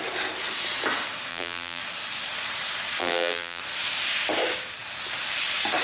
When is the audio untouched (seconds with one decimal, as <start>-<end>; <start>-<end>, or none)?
0.0-1.3; 1.8-3.0; 3.6-5.8